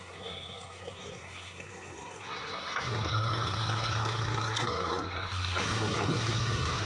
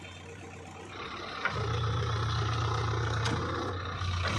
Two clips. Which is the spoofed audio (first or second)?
first